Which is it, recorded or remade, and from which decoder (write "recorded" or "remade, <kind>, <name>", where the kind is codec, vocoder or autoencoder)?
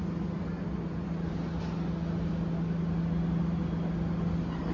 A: recorded